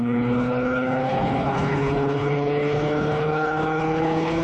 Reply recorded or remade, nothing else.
remade